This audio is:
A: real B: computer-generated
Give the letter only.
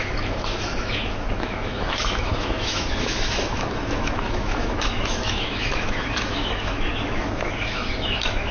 B